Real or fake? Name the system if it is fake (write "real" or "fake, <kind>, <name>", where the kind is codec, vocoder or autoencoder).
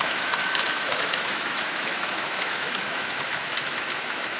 fake, autoencoder, DAC-VAE